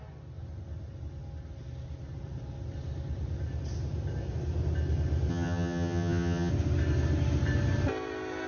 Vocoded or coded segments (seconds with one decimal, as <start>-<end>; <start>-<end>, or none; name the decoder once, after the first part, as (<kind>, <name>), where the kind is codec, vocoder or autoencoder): 5.3-6.5 (vocoder, HiFi-GAN)